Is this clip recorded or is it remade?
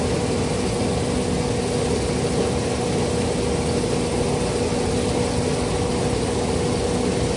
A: recorded